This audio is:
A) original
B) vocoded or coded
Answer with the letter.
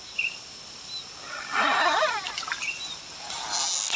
A